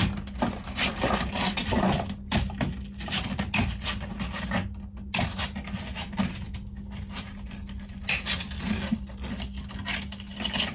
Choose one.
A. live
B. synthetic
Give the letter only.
A